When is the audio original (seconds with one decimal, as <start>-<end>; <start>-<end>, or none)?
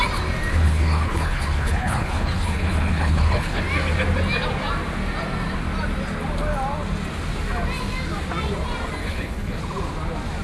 0.0-0.5; 3.6-9.0; 9.6-10.4